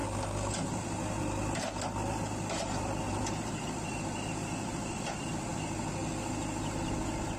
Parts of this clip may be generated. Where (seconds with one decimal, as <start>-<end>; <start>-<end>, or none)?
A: 3.1-5.5